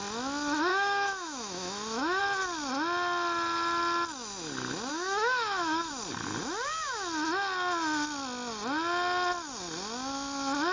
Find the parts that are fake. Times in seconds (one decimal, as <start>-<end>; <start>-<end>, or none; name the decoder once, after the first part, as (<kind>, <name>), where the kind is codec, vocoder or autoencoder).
0.7-2.2 (autoencoder, DAC-VAE); 4.9-5.9